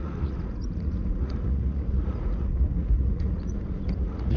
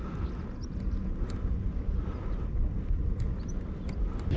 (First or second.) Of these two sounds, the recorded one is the second